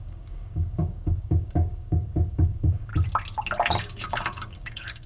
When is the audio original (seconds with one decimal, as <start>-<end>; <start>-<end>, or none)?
2.9-3.8

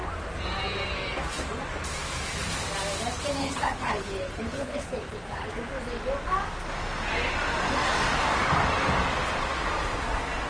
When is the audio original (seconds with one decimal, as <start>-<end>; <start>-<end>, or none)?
0.0-3.4; 5.5-10.5

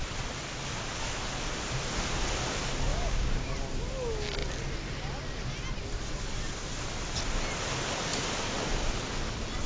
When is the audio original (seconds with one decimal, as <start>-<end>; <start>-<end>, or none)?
0.0-2.9; 3.5-9.7

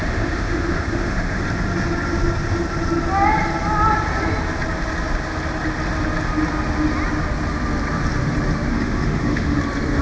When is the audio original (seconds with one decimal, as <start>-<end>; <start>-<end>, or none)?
1.4-8.7; 9.6-10.0